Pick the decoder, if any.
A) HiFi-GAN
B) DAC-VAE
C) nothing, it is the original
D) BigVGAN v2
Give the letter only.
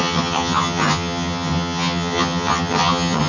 A